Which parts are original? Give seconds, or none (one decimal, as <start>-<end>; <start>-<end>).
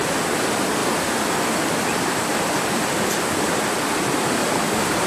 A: 0.0-0.8; 3.1-4.4